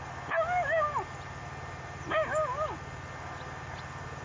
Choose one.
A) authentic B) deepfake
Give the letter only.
A